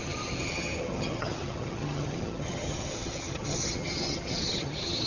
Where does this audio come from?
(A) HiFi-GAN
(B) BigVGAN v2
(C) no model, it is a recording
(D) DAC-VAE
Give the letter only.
A